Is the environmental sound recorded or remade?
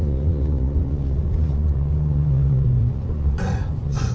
remade